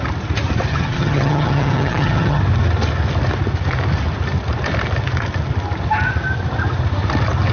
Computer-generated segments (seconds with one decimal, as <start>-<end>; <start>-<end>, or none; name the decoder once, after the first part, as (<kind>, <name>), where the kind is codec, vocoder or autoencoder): 0.7-2.4 (vocoder, HiFi-GAN)